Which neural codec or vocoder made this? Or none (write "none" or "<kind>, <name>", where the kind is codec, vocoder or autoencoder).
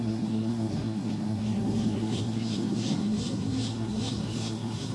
codec, SNAC